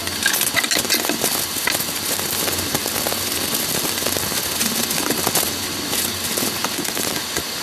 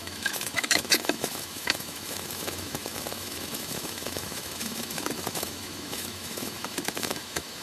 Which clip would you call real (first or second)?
first